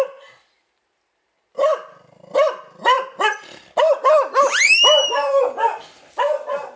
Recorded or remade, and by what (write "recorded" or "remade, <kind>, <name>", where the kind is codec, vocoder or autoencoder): recorded